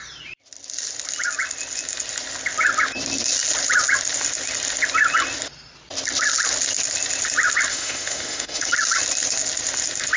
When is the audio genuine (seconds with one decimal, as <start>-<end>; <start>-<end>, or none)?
0.0-7.7; 8.7-10.2